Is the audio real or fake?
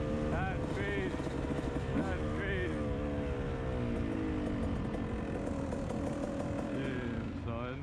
real